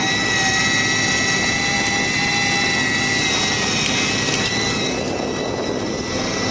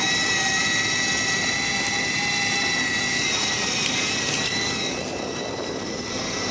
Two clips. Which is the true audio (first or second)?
first